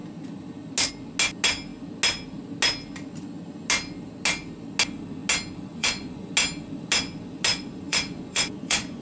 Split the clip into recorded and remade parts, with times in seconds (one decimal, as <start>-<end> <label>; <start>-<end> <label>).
0.0-5.7 recorded; 5.7-6.3 remade; 6.3-7.5 recorded; 7.5-9.0 remade